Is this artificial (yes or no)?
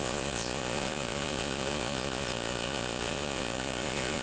yes